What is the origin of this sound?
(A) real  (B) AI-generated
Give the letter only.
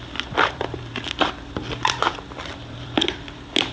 B